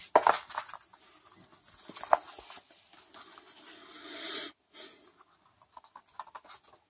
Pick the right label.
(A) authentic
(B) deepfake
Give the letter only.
A